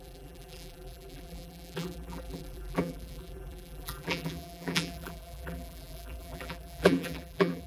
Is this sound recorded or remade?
remade